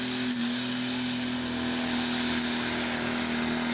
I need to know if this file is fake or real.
real